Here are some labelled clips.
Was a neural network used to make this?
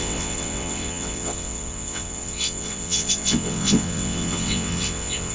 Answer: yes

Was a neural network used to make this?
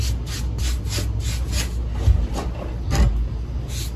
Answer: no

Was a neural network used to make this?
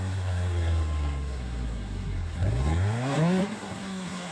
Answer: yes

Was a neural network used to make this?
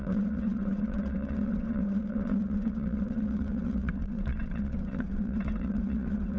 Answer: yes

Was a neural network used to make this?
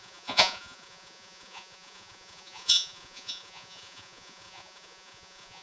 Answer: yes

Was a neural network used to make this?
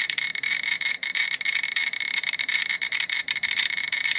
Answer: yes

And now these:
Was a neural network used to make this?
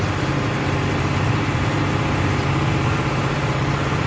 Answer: yes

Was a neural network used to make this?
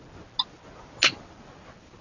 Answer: no